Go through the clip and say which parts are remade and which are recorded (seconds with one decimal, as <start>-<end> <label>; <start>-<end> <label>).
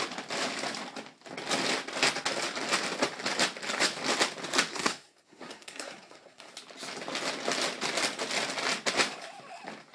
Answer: 0.0-4.7 recorded; 4.7-6.5 remade; 6.5-9.9 recorded